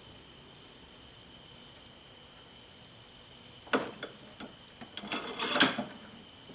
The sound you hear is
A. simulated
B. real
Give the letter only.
B